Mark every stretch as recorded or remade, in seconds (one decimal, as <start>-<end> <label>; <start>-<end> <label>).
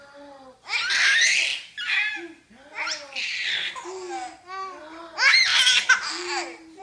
0.0-6.8 recorded